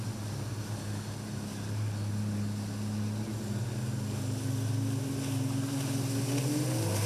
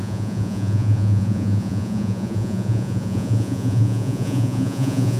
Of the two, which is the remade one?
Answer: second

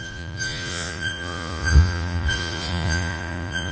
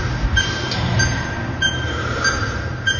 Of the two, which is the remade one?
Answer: first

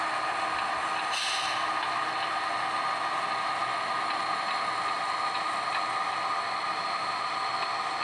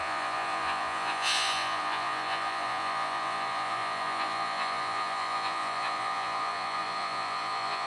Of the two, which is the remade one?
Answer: second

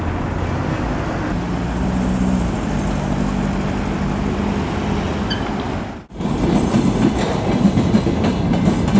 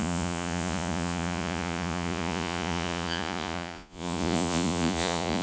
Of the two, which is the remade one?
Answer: second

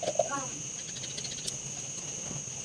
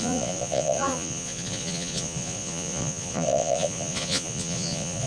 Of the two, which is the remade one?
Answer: second